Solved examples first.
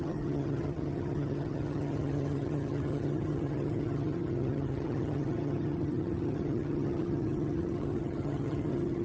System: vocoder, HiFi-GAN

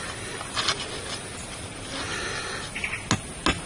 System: none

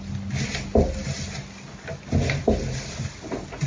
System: none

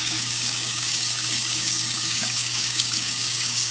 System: codec, DAC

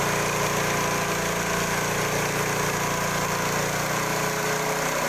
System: vocoder, BigVGAN v2